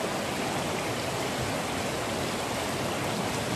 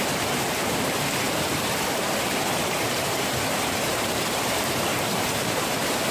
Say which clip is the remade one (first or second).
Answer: second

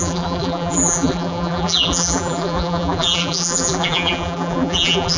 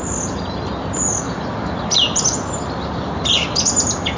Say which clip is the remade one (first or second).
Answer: first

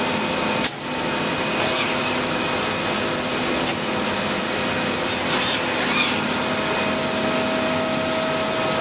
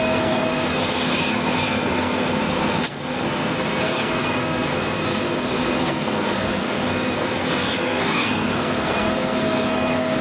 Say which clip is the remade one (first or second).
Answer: second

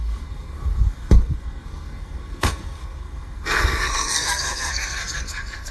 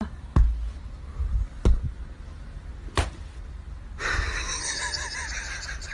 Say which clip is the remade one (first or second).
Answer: first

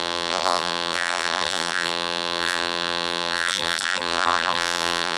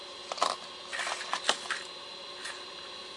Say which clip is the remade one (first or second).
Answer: first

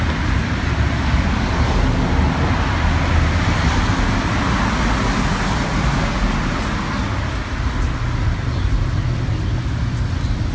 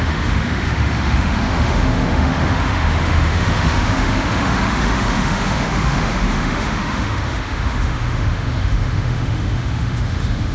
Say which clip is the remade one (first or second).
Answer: second